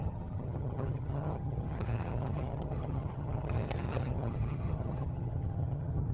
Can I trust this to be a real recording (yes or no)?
no